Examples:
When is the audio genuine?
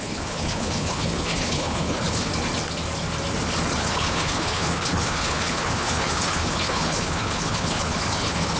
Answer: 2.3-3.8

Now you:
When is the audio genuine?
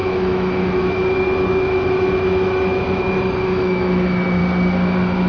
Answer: 4.4-5.3